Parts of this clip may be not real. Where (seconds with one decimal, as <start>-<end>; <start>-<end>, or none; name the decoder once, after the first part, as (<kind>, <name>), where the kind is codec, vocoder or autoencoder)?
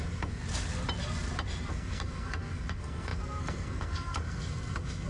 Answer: 0.0-0.4 (codec, SNAC); 1.7-5.1